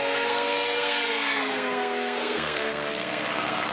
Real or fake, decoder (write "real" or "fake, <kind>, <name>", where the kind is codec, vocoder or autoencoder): fake, codec, SNAC